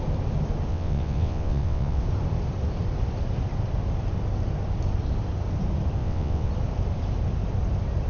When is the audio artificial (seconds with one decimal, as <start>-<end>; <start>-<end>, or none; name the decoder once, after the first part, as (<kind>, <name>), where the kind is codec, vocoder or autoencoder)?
0.7-2.0 (vocoder, WaveNeXt); 6.0-6.5